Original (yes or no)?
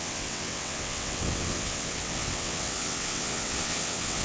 no